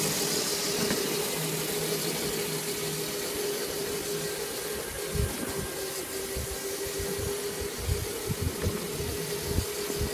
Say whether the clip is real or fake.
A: real